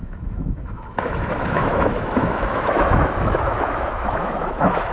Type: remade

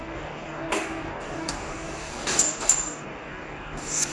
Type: remade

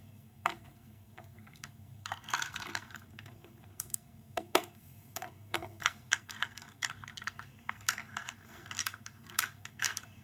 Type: remade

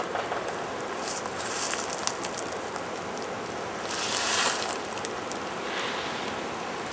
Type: recorded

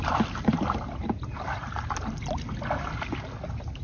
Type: recorded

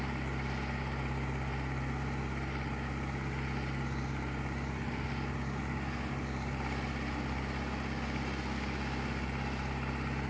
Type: recorded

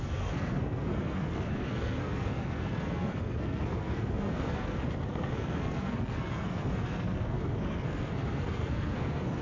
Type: remade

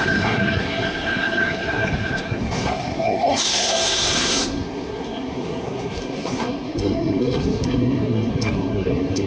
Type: remade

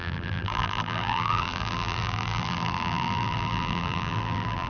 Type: remade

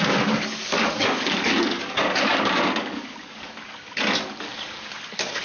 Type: remade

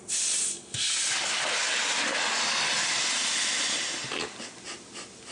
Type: recorded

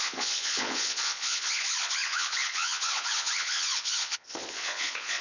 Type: remade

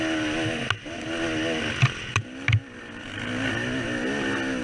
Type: recorded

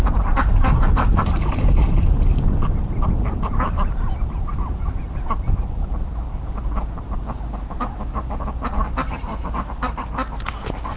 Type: recorded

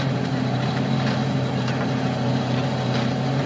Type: recorded